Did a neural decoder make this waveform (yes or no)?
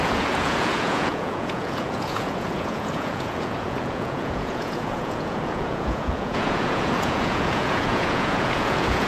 yes